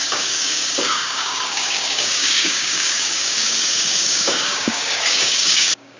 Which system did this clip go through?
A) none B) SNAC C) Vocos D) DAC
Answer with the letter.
D